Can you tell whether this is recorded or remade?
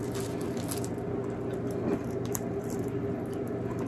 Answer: recorded